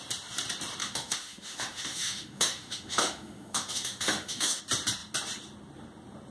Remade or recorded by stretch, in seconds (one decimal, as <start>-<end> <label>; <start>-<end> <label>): 0.0-0.8 recorded; 0.8-4.6 remade; 4.6-6.3 recorded